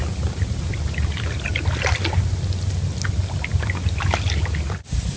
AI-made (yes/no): no